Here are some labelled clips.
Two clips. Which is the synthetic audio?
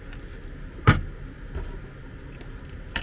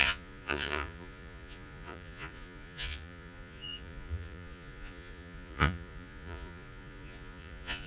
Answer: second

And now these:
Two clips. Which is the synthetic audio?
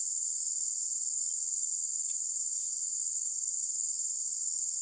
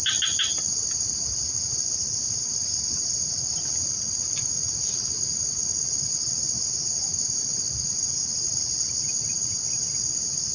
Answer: first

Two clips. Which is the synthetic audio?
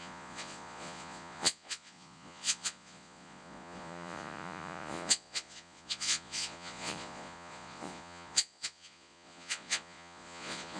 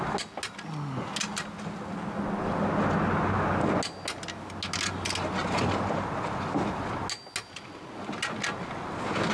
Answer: first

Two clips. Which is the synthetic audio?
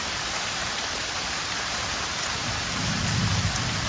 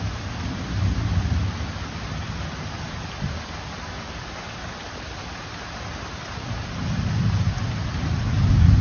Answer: first